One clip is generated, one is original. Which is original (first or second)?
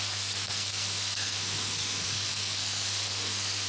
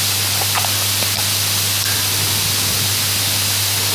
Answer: second